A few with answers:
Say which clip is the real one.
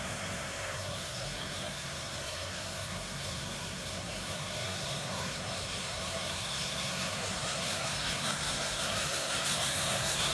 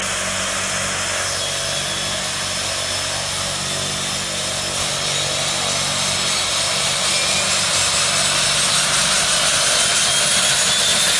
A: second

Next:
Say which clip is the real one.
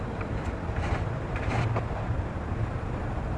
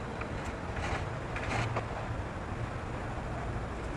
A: second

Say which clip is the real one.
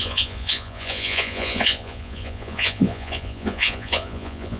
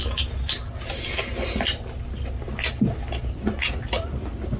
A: second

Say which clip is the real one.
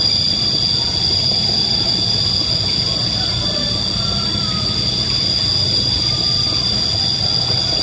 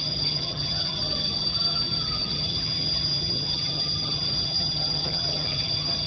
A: first